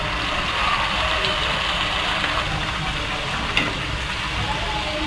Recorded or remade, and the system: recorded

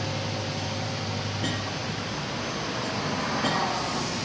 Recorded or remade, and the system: recorded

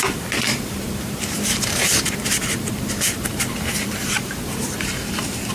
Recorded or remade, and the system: remade, vocoder, BigVGAN v2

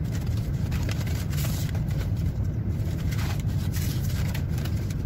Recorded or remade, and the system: remade, vocoder, BigVGAN v2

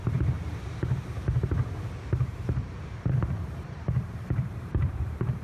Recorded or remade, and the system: remade, vocoder, BigVGAN v2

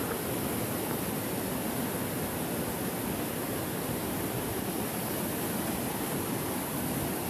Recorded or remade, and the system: recorded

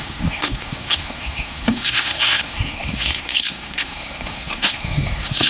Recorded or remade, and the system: remade, codec, SNAC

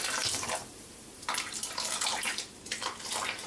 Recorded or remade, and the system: remade, vocoder, BigVGAN v2